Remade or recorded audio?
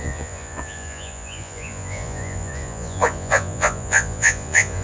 remade